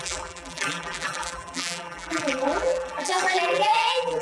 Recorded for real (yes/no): no